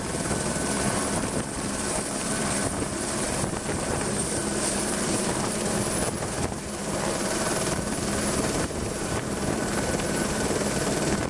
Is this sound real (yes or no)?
no